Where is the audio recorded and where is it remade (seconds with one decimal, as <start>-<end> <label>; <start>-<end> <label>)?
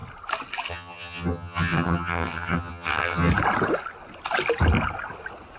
0.0-0.7 recorded; 0.7-3.3 remade; 3.3-5.6 recorded